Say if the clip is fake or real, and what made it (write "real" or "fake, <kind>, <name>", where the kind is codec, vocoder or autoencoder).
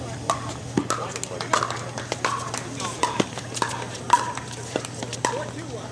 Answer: real